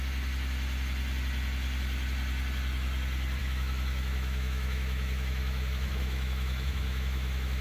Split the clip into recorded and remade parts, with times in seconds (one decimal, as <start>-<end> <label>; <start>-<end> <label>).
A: 0.0-3.4 recorded; 3.4-7.6 remade